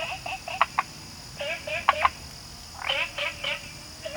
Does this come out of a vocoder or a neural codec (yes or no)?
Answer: no